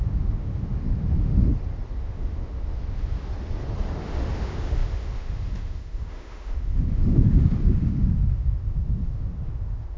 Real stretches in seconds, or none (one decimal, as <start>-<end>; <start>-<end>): 1.5-2.0; 3.3-4.0